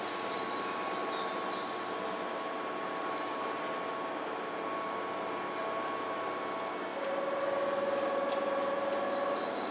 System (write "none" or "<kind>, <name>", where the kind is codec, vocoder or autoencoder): none